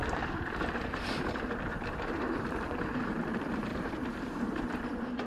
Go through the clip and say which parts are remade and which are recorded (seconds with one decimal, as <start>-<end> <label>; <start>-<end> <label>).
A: 0.0-3.2 remade; 3.2-3.7 recorded; 3.7-4.8 remade; 4.8-5.3 recorded